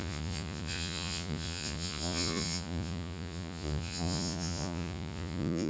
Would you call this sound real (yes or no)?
no